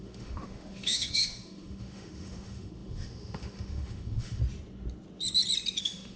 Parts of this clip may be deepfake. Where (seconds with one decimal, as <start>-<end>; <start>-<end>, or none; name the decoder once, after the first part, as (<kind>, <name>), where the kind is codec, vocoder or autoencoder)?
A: 0.0-4.4 (autoencoder, DAC-VAE); 5.8-6.2

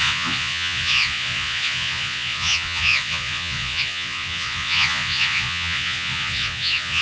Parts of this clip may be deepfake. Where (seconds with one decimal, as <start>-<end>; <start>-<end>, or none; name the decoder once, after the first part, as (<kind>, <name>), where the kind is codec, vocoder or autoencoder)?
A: 0.0-7.0 (vocoder, Vocos)

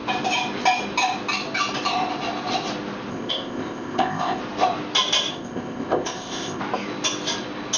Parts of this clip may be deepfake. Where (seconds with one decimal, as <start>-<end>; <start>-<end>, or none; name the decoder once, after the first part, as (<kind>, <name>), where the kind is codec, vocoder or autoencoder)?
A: 3.1-4.4 (codec, ZipCodec); 5.3-6.6

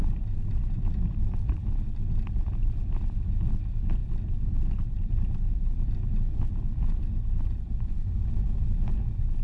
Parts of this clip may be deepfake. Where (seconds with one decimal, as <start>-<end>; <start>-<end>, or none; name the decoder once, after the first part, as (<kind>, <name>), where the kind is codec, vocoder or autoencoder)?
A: none

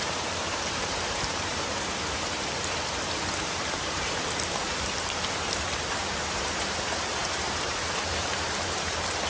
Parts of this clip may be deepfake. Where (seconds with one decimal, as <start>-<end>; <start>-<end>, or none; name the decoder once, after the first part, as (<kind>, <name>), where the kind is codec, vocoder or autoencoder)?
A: 0.0-9.3 (vocoder, BigVGAN v2)

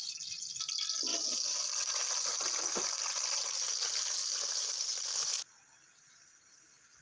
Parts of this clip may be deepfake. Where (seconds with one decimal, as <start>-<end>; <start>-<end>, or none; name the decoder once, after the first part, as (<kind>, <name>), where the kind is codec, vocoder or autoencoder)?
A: none